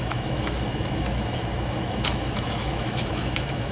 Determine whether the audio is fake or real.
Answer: fake